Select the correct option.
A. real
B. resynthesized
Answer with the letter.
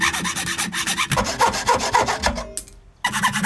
A